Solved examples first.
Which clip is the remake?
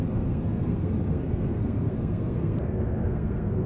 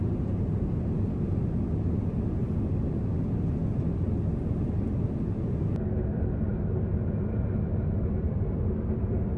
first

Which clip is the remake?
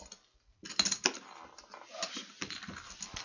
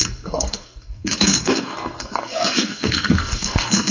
second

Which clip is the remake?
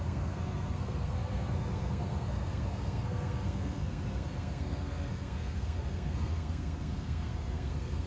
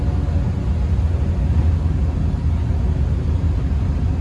first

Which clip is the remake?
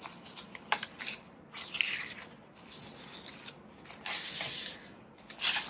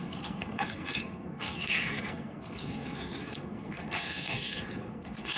second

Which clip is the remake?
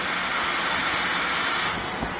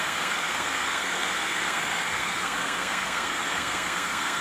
second